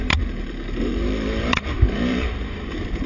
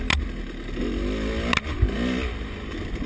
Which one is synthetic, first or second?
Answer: first